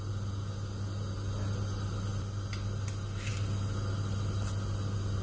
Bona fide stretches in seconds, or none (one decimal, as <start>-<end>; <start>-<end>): 0.0-5.2